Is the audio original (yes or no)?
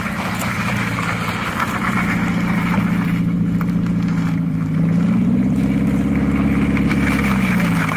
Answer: no